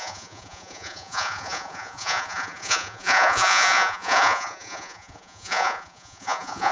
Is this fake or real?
fake